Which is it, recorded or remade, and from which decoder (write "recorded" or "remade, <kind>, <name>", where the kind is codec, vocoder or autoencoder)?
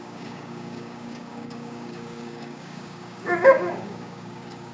remade, codec, DAC